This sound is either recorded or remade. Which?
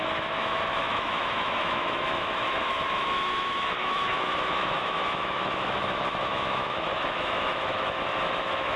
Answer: remade